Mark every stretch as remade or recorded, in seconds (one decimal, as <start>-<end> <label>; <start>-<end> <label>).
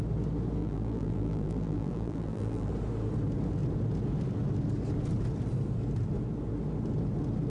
0.0-0.6 recorded; 0.6-2.7 remade; 2.7-7.5 recorded